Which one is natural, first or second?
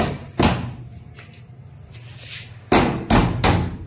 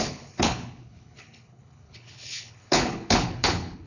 first